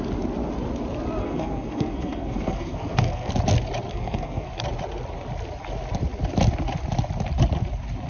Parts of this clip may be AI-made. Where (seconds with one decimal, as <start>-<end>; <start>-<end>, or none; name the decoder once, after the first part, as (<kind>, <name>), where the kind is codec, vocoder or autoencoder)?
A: 1.2-3.3 (codec, SNAC); 3.9-4.5